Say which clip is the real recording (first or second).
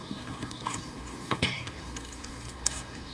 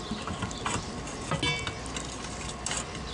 second